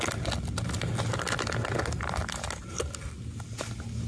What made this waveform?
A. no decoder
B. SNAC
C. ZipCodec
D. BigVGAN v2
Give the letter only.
A